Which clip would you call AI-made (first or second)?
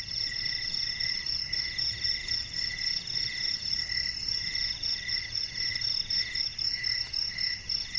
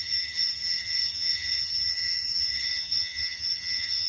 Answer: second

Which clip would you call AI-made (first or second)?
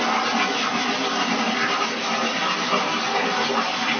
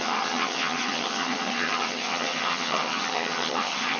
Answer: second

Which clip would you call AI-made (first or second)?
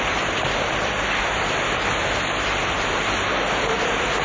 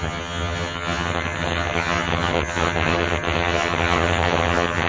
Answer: second